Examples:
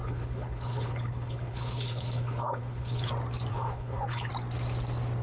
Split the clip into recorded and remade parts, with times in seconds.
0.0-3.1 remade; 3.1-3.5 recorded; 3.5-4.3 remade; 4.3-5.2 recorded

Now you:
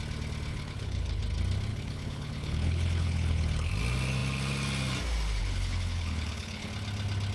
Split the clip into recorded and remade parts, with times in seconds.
0.0-0.5 recorded; 0.5-1.2 remade; 1.2-1.7 recorded; 1.7-3.7 remade; 3.7-5.4 recorded; 5.4-6.7 remade; 6.7-7.3 recorded

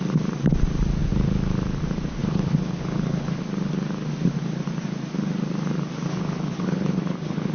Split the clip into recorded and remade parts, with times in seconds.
0.0-2.2 recorded; 2.2-3.4 remade; 3.4-6.1 recorded; 6.1-7.5 remade

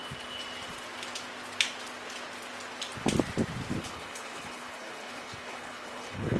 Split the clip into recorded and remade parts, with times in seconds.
0.0-3.8 recorded; 3.8-6.4 remade

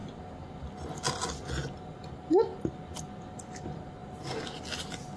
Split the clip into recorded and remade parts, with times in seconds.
0.0-5.2 recorded